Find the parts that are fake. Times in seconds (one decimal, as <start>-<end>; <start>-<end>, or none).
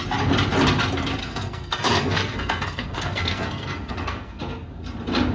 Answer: 1.2-4.4